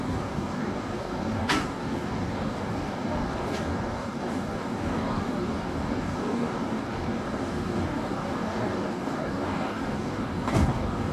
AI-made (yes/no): yes